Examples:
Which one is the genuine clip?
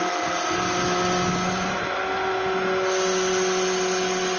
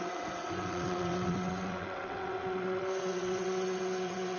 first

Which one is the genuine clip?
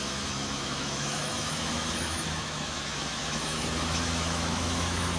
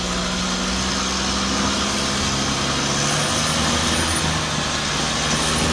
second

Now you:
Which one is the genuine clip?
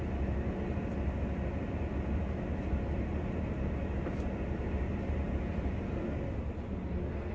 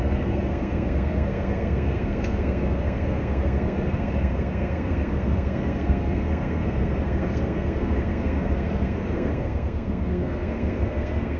first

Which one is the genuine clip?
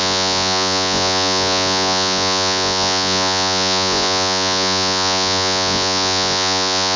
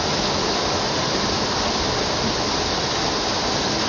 second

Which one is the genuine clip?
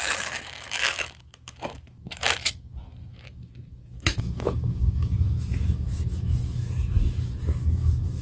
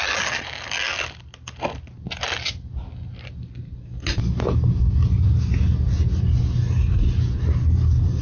second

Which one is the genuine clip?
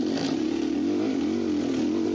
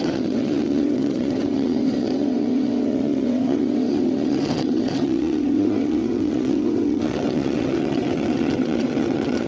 first